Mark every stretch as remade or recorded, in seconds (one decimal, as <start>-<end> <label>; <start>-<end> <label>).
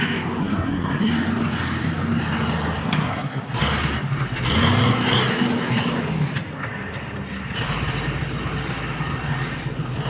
0.0-0.4 recorded; 0.4-1.1 remade; 1.1-2.8 recorded; 2.8-3.5 remade; 3.5-10.1 recorded